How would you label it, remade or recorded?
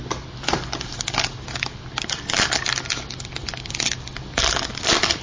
recorded